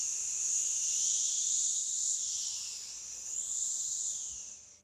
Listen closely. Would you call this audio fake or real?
real